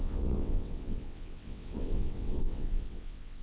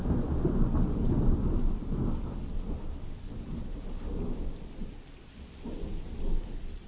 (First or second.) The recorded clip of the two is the second